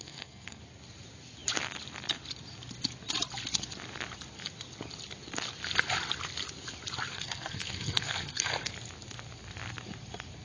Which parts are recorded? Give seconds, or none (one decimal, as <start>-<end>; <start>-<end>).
0.6-7.1; 8.7-10.4